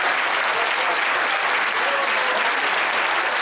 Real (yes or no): yes